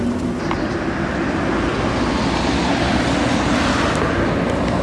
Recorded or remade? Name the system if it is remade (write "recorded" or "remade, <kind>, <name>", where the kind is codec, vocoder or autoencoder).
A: recorded